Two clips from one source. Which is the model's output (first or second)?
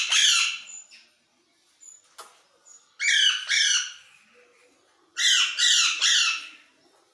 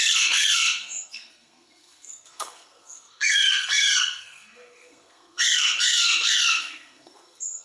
second